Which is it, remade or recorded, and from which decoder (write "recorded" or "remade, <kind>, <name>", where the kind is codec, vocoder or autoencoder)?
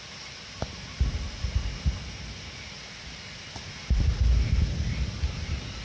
recorded